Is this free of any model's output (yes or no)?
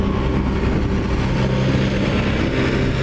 yes